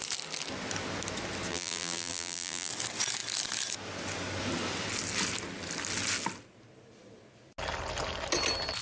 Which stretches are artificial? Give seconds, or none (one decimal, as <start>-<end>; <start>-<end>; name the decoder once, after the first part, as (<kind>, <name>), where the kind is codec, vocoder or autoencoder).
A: 1.5-2.7 (vocoder, BigVGAN v2)